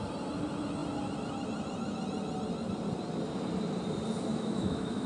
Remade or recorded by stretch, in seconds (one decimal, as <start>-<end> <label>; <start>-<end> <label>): 0.0-4.3 recorded; 4.3-5.1 remade